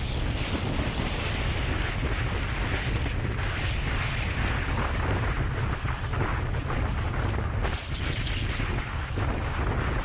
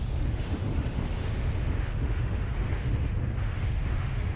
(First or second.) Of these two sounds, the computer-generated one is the second